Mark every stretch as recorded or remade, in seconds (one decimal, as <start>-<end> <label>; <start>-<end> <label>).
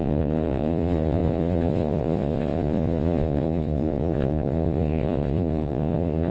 0.0-6.3 remade